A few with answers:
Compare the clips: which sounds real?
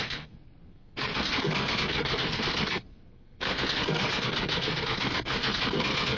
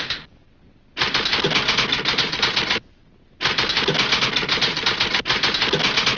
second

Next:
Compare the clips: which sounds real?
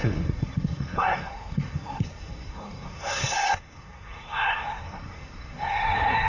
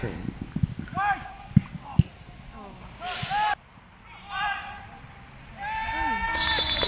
second